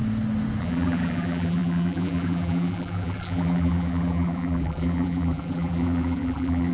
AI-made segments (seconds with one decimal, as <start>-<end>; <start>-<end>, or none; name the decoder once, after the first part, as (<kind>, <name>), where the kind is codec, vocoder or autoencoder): 0.6-6.7 (vocoder, BigVGAN v2)